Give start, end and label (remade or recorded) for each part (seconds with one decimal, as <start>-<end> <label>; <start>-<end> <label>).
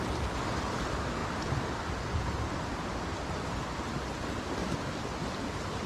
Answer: 0.0-5.9 recorded